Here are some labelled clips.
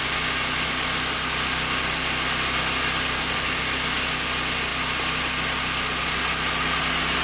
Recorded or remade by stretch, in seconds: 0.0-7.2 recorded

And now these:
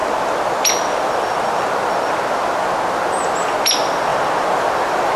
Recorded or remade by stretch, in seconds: 0.0-5.2 recorded

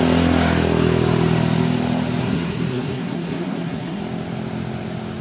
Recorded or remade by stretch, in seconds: 0.0-2.2 recorded; 2.2-4.0 remade; 4.0-5.2 recorded

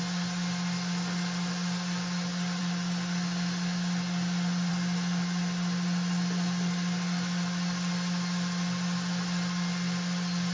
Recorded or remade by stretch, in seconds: 0.0-10.5 recorded

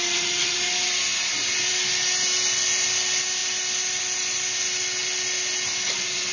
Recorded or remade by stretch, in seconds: 0.0-6.3 recorded